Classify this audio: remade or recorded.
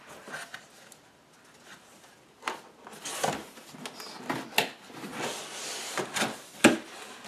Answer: recorded